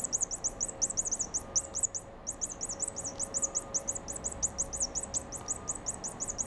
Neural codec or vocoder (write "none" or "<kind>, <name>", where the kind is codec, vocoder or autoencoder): none